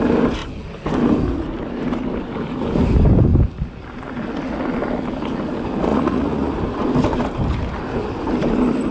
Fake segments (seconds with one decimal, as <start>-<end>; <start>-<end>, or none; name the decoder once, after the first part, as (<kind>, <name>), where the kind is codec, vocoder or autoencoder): 5.9-6.5 (vocoder, Vocos)